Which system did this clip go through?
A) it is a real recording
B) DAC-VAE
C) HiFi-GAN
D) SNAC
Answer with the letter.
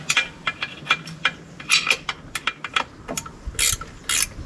A